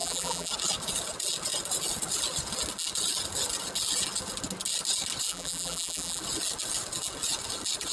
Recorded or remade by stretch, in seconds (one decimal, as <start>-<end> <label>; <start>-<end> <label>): 0.0-0.5 remade; 0.5-5.3 recorded; 5.3-6.2 remade; 6.2-7.9 recorded